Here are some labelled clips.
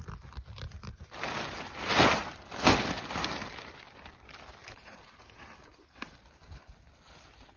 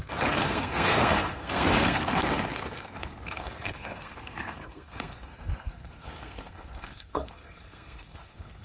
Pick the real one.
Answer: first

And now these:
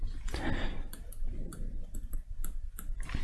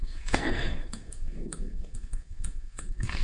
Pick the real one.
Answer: first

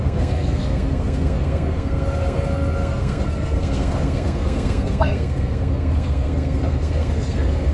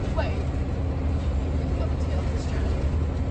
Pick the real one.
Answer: second